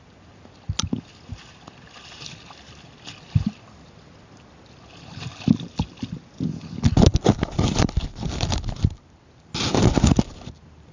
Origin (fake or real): real